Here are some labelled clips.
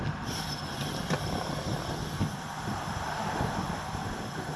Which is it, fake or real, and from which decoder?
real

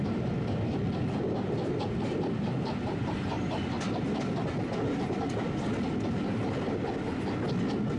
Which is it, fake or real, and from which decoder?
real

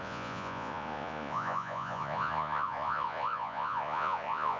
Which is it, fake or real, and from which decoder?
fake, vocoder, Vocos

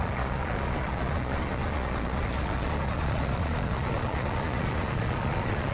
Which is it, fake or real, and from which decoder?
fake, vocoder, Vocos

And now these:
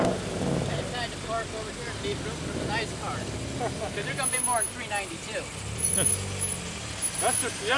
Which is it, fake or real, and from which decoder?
real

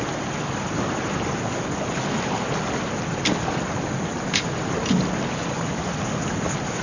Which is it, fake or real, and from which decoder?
real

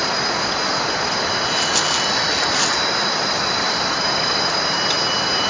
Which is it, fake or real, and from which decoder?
real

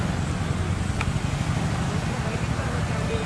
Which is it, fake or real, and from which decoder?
real